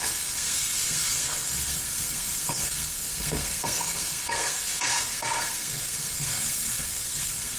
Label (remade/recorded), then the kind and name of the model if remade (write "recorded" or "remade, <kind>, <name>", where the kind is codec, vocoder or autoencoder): remade, codec, SNAC